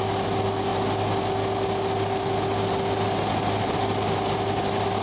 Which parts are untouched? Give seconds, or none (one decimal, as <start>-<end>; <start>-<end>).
0.0-5.0